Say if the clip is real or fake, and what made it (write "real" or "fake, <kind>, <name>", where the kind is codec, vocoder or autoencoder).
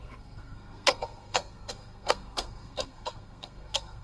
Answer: fake, codec, SNAC